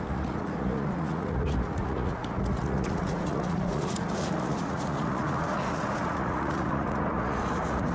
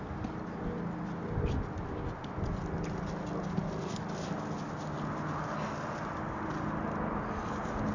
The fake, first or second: first